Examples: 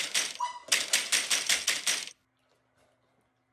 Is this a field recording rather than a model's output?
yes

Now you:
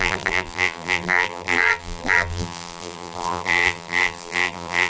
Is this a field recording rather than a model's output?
no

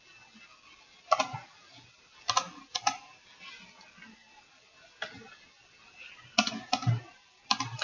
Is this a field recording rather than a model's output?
yes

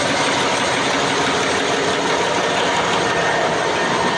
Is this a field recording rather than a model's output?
yes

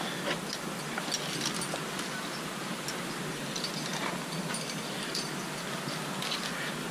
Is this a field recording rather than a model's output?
yes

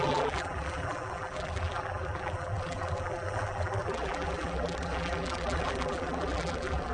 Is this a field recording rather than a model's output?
no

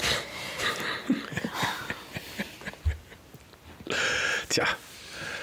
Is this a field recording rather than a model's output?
yes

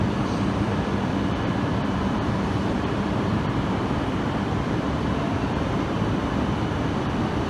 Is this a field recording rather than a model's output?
no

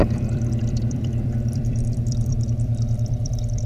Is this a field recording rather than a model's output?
no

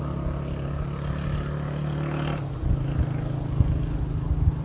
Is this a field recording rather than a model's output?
yes